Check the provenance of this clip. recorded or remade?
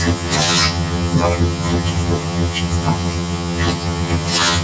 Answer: remade